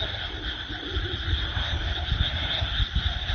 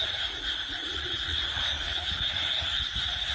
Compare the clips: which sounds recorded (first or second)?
first